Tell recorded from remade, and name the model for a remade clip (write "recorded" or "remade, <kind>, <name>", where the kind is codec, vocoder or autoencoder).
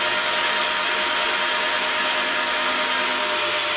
recorded